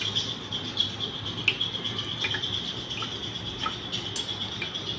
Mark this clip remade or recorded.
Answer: recorded